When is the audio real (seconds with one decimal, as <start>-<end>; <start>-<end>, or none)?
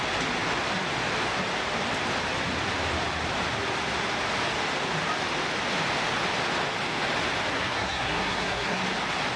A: 0.0-7.5; 8.8-9.4